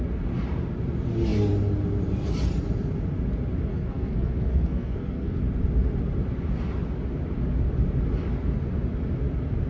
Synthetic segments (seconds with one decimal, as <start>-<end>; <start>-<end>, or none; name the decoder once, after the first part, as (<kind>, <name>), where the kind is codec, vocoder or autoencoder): 3.7-5.4 (codec, SNAC)